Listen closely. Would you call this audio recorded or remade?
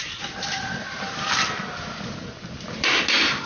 recorded